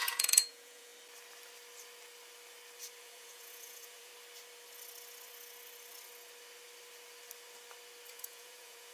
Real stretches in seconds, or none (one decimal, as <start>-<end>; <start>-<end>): 0.9-3.0; 4.1-8.1